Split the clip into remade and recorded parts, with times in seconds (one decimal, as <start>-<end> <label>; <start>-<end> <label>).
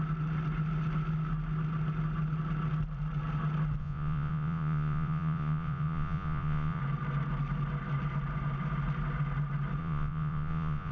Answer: 0.0-3.8 recorded; 3.8-6.8 remade; 6.8-9.8 recorded; 9.8-10.9 remade